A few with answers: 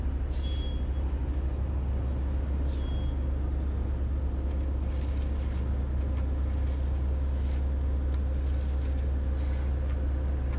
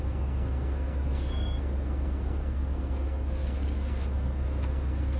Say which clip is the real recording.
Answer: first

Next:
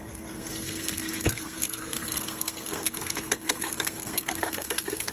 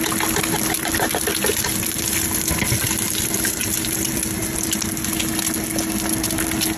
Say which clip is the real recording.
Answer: second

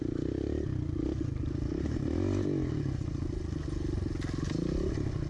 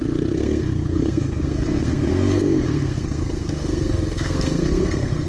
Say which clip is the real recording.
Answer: first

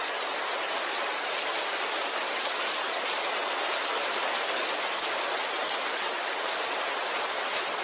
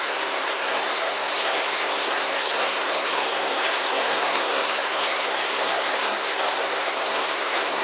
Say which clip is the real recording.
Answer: first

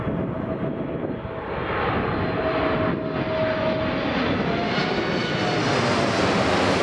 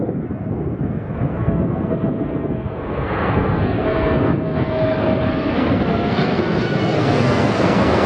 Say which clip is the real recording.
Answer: first